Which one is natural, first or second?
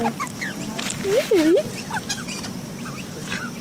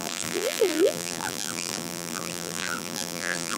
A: first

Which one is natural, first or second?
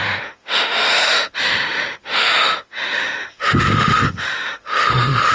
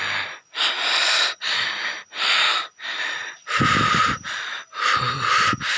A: second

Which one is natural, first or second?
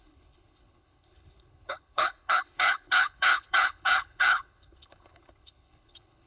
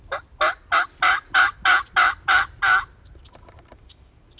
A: second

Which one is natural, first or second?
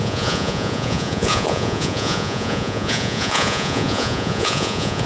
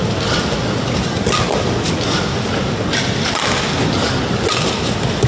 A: second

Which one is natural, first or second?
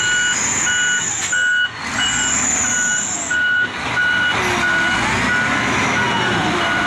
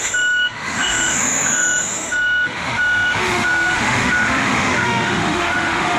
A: first